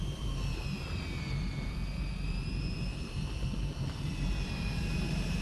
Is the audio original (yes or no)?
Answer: no